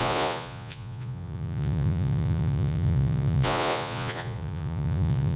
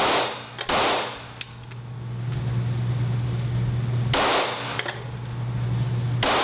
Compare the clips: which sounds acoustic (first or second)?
second